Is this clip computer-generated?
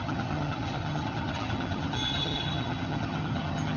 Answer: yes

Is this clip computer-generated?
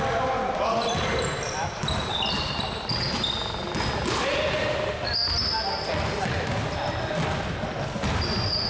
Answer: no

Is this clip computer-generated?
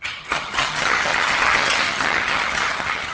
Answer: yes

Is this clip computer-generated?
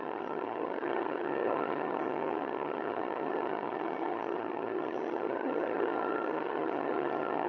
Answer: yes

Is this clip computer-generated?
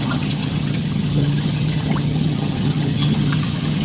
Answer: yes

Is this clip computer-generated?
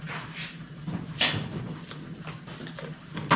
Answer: no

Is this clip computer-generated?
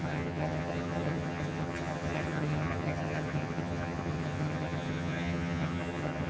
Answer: yes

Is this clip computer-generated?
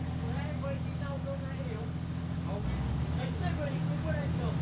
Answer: no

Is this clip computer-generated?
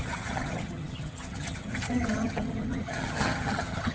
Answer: yes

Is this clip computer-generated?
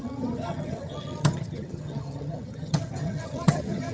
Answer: yes